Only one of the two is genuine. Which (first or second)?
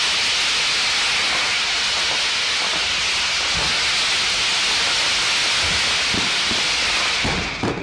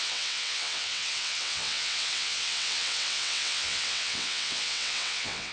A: first